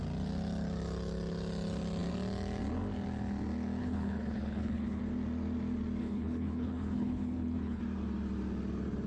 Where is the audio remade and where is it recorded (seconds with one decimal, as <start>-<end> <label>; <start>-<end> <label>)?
0.0-3.8 recorded; 3.8-5.0 remade; 5.0-6.0 recorded; 6.0-7.8 remade; 7.8-9.1 recorded

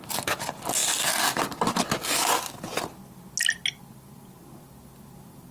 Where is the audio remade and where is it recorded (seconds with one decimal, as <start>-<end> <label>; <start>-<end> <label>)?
0.0-5.5 recorded

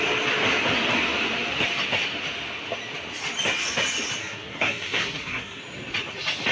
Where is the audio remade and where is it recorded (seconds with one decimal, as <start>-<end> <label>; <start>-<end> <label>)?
0.0-4.2 recorded; 4.2-5.6 remade; 5.6-6.5 recorded

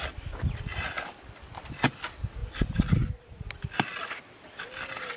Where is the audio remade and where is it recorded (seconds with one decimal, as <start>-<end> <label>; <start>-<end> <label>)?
0.0-5.2 recorded

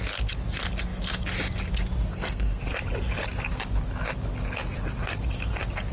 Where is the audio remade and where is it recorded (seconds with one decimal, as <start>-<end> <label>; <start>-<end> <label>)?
0.0-2.1 recorded; 2.1-2.6 remade; 2.6-5.9 recorded

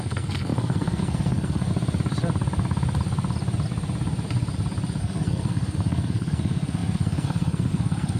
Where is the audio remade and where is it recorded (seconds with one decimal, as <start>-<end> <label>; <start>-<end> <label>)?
0.0-1.7 remade; 1.7-5.0 recorded; 5.0-8.2 remade